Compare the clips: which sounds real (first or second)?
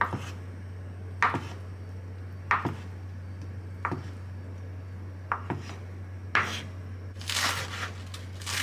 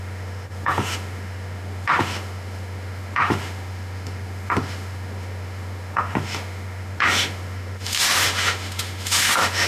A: first